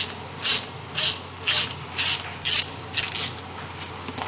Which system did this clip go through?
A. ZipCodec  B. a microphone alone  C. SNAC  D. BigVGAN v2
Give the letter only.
B